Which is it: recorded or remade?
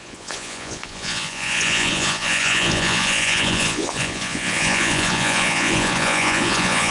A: remade